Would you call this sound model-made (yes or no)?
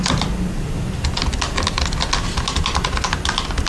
no